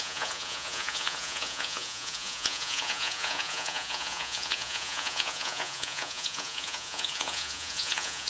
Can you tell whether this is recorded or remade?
remade